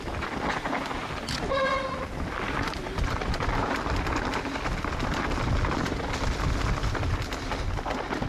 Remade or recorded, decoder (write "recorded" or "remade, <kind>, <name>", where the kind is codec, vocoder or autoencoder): recorded